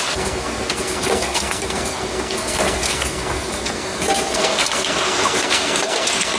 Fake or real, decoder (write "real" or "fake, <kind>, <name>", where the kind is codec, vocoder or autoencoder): fake, codec, SNAC